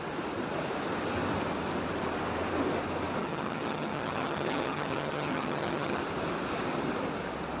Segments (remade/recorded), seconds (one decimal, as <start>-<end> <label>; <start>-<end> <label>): 0.0-3.2 recorded; 3.2-6.0 remade; 6.0-7.6 recorded